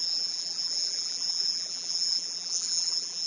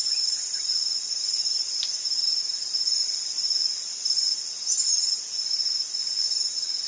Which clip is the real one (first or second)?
second